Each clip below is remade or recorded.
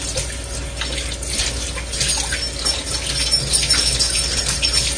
recorded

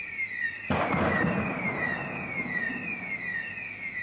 recorded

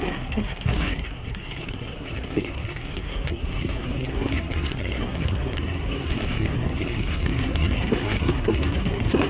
remade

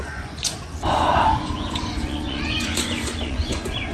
remade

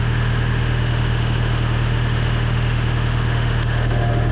remade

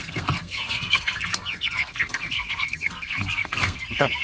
remade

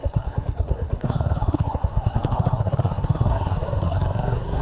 remade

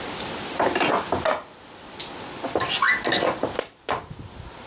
recorded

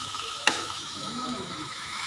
remade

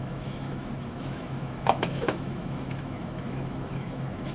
remade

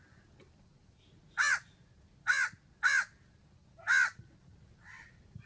recorded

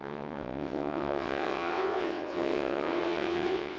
remade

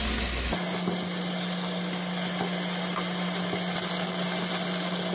recorded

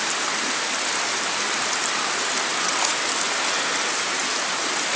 recorded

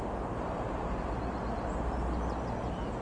recorded